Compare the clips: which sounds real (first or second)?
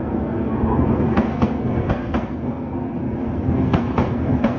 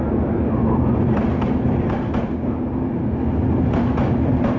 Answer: second